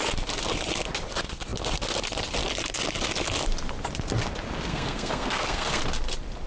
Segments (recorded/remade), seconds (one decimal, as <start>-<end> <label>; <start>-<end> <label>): 0.0-4.7 recorded; 4.7-5.8 remade; 5.8-6.5 recorded